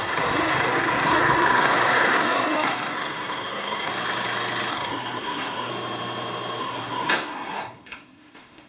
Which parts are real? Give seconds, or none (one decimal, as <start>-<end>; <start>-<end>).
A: 3.9-4.7; 5.7-6.6